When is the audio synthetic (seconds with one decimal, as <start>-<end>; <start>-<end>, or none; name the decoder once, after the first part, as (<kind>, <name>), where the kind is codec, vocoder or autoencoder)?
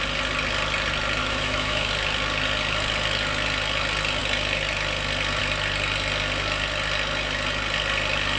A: 1.2-1.9 (autoencoder, DAC-VAE)